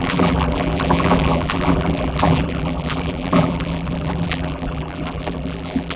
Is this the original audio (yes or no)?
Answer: no